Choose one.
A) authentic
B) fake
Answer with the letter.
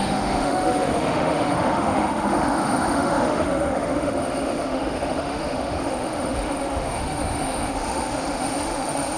B